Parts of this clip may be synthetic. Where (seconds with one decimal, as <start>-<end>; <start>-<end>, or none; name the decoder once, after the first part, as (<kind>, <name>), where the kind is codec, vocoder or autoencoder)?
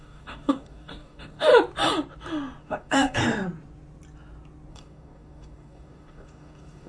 0.0-1.5 (codec, DAC); 2.6-3.2; 4.7-6.9